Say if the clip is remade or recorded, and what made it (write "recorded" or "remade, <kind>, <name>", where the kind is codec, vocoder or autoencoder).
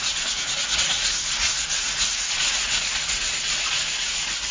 remade, vocoder, Vocos